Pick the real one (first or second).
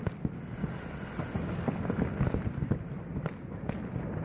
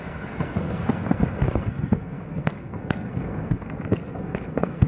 first